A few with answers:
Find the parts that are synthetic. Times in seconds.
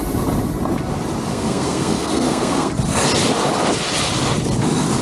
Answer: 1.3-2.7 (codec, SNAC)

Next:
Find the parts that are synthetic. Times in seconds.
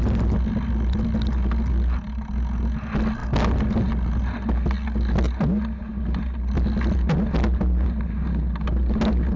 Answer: none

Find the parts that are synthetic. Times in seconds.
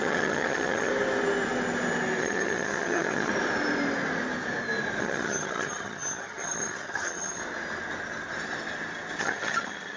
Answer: 0.0-0.9 (vocoder, HiFi-GAN); 2.2-3.3; 5.0-7.4; 9.2-10.0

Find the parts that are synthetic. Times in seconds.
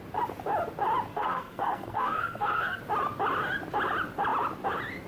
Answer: 1.1-2.8 (codec, SNAC)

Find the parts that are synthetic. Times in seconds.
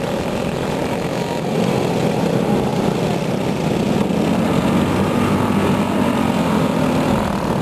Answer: none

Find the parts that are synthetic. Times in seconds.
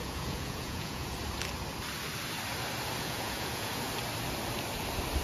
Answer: 0.0-1.2 (vocoder, Vocos); 3.0-3.7